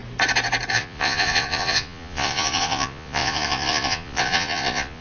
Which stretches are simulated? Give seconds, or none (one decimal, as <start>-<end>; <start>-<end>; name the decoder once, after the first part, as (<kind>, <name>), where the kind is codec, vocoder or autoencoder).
0.7-5.0 (vocoder, Vocos)